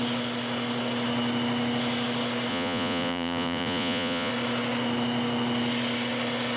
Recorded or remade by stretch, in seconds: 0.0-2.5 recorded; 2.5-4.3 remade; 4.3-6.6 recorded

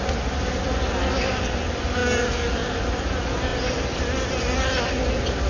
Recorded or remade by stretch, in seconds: 0.0-5.5 recorded

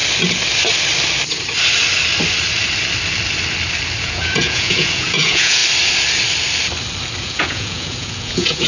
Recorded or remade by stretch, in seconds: 0.0-4.0 recorded; 4.0-5.6 remade; 5.6-7.2 recorded; 7.2-8.7 remade

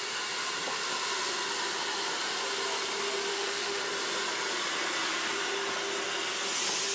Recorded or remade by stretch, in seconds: 0.0-3.3 recorded; 3.3-3.8 remade; 3.8-6.9 recorded

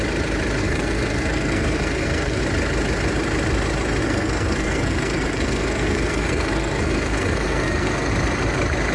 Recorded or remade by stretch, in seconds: 0.0-0.6 recorded; 0.6-2.4 remade; 2.4-4.0 recorded; 4.0-8.1 remade; 8.1-8.9 recorded

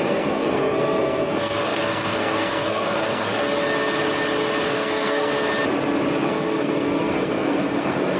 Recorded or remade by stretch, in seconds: 0.0-3.4 remade; 3.4-4.7 recorded; 4.7-5.3 remade; 5.3-6.2 recorded; 6.2-8.2 remade

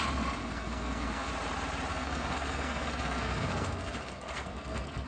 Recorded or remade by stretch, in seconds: 0.0-0.4 recorded; 0.4-1.3 remade; 1.3-1.9 recorded; 1.9-5.1 remade

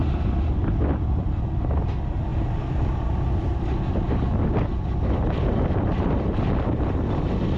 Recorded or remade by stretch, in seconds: 0.0-7.6 recorded